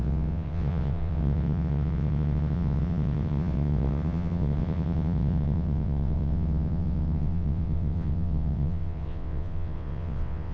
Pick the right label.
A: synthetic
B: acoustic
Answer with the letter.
A